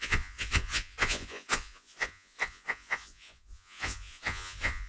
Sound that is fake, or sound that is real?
fake